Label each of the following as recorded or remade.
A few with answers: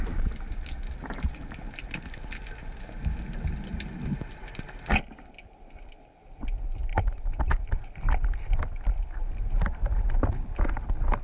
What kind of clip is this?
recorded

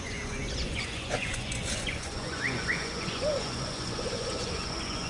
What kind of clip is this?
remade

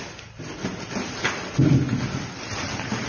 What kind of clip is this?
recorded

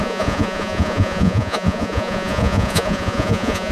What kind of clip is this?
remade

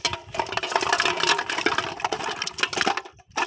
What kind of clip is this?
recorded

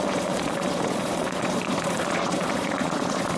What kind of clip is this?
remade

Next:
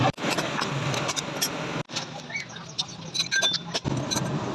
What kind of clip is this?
recorded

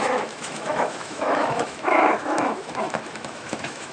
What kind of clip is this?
remade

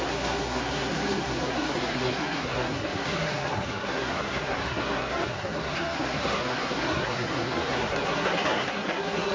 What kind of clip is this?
remade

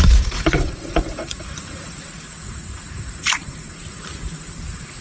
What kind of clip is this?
remade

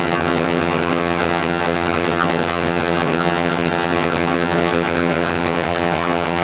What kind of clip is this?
remade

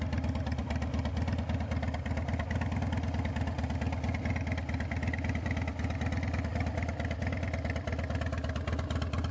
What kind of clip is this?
recorded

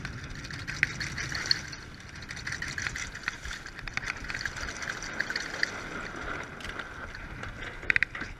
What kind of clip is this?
recorded